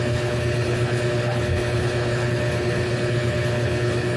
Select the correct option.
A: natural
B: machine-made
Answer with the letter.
B